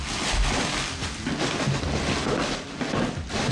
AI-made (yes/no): no